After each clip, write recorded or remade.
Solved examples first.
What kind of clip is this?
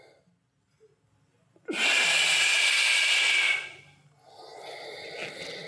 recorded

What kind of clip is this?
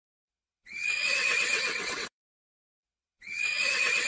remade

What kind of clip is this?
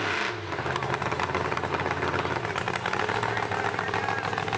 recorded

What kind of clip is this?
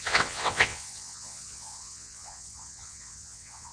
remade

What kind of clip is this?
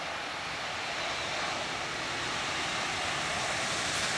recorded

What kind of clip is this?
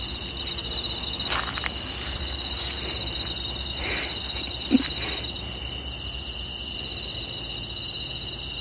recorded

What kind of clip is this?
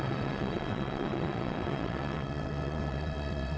remade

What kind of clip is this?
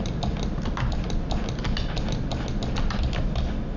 recorded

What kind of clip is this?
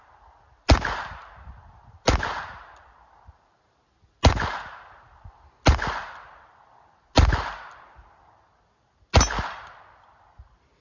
recorded